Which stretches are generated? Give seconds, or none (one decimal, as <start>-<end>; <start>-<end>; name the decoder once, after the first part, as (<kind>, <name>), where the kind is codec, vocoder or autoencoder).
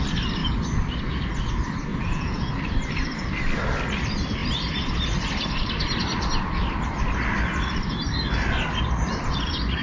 1.9-2.5 (vocoder, Vocos)